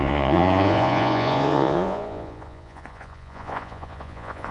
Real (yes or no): no